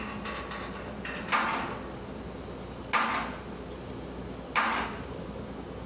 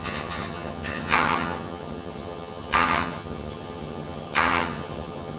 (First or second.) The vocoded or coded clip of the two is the second